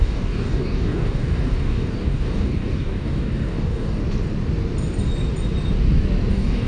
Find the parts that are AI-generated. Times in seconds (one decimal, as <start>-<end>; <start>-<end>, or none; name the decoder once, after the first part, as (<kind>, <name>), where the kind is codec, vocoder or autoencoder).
0.0-4.0 (codec, DAC); 6.3-6.7